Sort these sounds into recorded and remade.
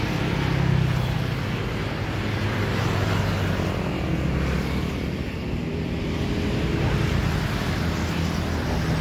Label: recorded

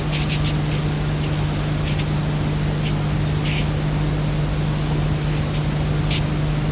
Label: recorded